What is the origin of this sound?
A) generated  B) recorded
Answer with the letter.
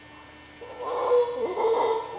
B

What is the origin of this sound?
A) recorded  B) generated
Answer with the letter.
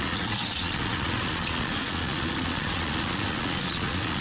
B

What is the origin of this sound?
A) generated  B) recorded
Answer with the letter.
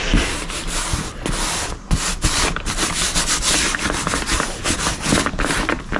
B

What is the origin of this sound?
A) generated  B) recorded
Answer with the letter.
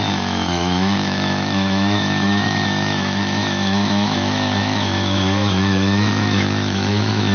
A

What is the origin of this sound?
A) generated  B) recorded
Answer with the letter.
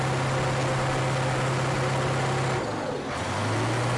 B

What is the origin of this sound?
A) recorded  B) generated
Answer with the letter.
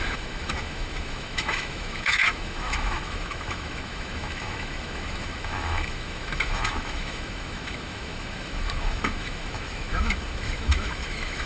B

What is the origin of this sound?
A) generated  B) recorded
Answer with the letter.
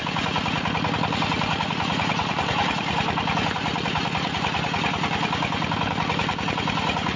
B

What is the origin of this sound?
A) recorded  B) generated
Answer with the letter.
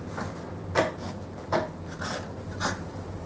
A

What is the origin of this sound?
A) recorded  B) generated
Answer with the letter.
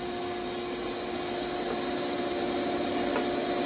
A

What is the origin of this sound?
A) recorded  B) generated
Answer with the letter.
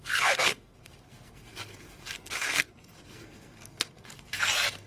B